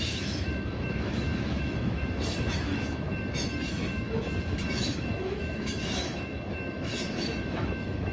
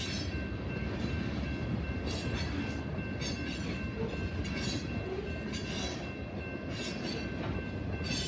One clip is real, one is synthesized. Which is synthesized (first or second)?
first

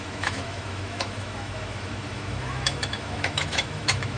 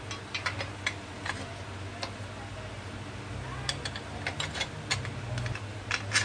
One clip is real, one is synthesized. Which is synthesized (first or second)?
first